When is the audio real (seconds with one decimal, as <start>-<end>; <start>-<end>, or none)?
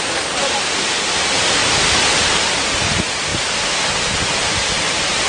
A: 0.0-5.3